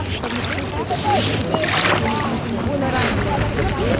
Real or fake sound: real